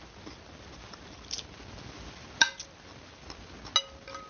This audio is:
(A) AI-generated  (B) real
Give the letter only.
B